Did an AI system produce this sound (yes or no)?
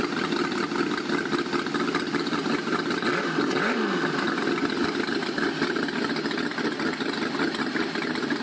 no